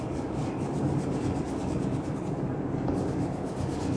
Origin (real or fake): fake